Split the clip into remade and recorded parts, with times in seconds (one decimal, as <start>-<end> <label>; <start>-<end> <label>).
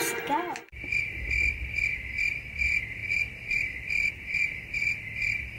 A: 0.0-3.0 recorded; 3.0-4.1 remade; 4.1-5.6 recorded